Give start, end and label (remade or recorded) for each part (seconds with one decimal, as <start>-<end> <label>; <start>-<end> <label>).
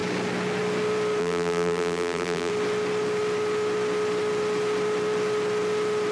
0.0-1.2 recorded; 1.2-2.5 remade; 2.5-6.1 recorded